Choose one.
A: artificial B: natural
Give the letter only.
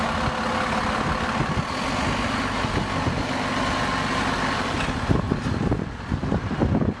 B